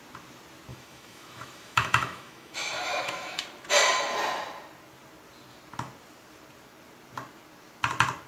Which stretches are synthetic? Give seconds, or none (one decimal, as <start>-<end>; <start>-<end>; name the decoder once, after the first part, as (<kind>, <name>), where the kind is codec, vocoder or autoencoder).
0.7-3.4 (autoencoder, DAC-VAE)